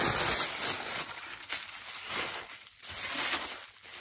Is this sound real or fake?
real